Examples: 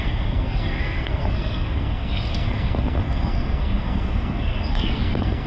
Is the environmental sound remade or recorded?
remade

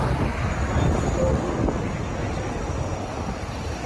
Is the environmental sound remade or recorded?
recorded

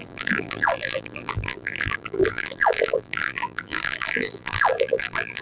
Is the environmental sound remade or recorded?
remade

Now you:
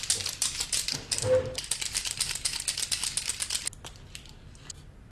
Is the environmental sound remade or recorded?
recorded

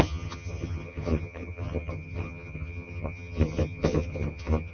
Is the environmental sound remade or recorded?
remade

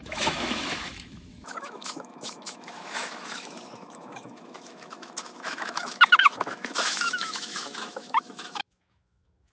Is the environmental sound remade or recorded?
remade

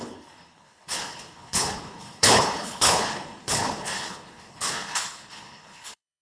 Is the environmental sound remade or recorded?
remade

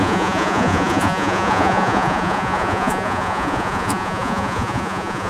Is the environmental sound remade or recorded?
remade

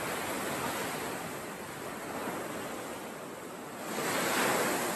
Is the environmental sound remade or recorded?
recorded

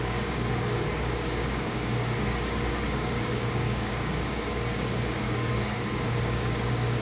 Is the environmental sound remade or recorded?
remade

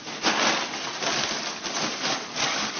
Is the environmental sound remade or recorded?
recorded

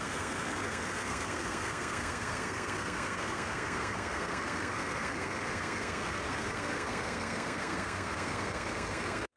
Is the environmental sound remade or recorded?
remade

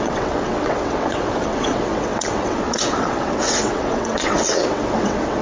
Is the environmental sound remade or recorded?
remade